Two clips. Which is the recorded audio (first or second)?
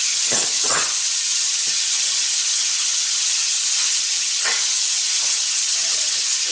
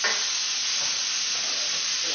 second